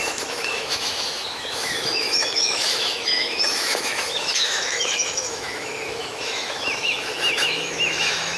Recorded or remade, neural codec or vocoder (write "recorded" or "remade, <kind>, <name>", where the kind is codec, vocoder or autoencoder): remade, autoencoder, DAC-VAE